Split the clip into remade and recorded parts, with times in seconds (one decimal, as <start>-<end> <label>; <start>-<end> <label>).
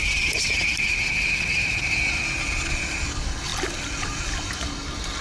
0.0-5.2 recorded